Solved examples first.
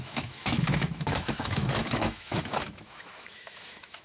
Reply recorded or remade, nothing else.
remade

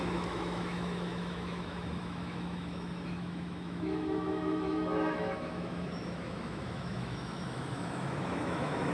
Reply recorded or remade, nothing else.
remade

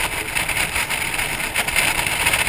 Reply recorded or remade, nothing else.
recorded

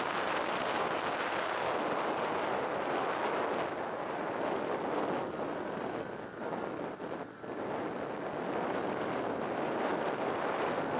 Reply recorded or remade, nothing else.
recorded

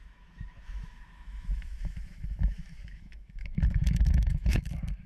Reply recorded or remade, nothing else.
remade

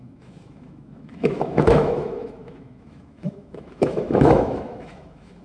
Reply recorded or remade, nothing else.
remade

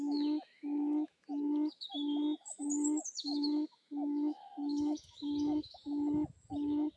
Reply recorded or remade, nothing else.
remade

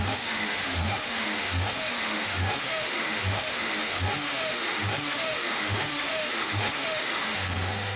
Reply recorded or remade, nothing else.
remade